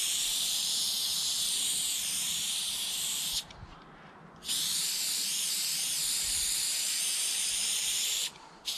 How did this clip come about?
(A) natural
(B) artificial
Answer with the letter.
B